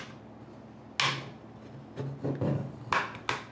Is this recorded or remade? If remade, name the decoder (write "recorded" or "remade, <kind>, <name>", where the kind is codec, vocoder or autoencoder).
recorded